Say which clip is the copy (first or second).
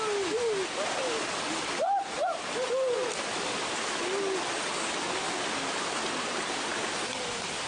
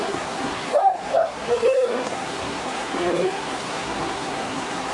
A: second